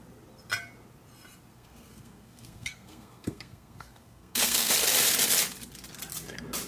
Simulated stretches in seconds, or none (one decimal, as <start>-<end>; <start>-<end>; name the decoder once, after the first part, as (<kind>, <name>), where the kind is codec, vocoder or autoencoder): 1.5-4.7 (codec, SNAC)